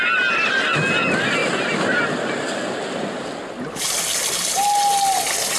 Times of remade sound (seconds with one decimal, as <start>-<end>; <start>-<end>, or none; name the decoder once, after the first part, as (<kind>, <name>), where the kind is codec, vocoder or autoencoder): none